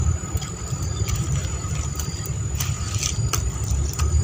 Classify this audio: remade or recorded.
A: remade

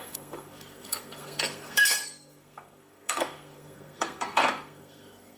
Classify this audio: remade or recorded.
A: remade